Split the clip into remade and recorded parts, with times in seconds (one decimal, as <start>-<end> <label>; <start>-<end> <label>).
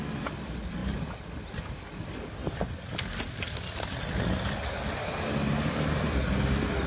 0.0-6.9 recorded